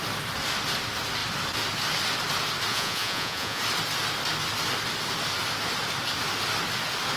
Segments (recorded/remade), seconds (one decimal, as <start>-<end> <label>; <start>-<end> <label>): 0.0-2.7 recorded; 2.7-3.6 remade; 3.6-7.2 recorded